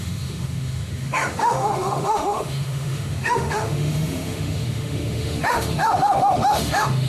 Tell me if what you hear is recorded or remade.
remade